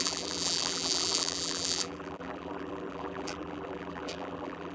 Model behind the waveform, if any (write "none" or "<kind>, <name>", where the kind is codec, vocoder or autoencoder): vocoder, BigVGAN v2